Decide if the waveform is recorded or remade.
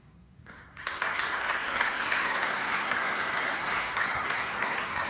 remade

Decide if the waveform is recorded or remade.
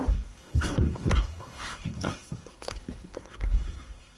remade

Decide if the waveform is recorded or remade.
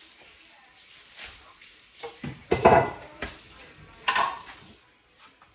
recorded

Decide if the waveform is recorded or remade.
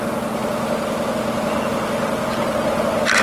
recorded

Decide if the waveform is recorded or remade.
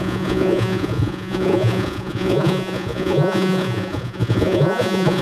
remade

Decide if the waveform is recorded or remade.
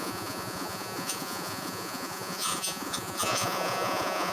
remade